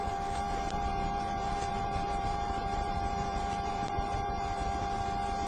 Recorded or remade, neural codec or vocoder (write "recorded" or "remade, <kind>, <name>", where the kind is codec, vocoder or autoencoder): remade, vocoder, BigVGAN v2